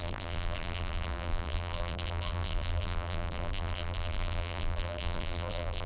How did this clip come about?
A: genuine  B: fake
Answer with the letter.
B